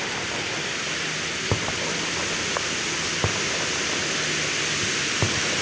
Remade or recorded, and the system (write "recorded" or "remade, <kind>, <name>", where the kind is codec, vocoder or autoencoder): recorded